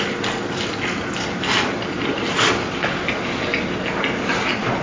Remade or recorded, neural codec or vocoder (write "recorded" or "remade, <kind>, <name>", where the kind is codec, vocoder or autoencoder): recorded